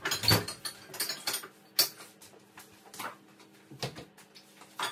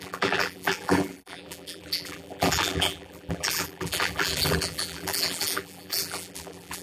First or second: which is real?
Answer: first